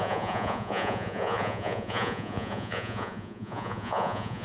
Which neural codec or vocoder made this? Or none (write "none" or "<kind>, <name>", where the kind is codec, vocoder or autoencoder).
vocoder, Vocos